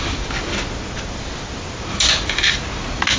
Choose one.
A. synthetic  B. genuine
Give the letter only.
B